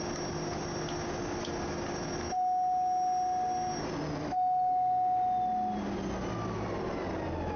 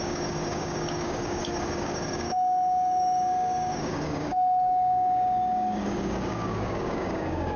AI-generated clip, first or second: second